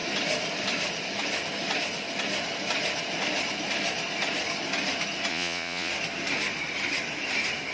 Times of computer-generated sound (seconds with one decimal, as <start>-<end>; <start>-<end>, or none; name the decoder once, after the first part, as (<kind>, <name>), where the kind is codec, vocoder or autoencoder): 5.3-5.9 (vocoder, Vocos)